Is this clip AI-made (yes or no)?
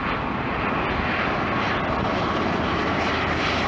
no